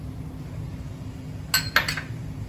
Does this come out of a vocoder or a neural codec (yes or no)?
no